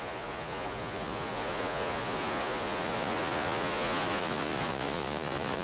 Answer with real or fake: fake